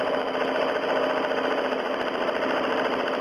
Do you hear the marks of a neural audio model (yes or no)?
yes